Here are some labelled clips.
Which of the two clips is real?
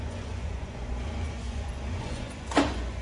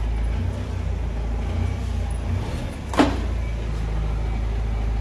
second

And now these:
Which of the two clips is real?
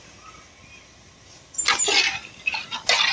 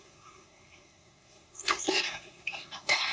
first